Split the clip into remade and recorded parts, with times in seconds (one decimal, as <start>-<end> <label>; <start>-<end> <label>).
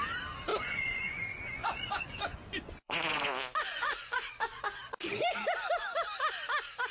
0.0-0.5 recorded; 0.5-4.6 remade; 4.6-6.9 recorded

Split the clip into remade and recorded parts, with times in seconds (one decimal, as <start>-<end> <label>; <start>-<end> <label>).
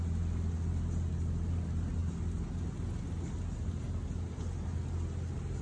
0.0-5.6 recorded